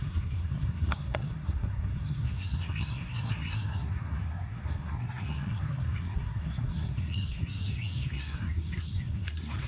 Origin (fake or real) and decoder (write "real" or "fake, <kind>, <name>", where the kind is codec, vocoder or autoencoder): fake, codec, SNAC